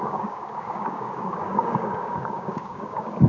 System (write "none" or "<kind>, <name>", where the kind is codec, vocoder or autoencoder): codec, DAC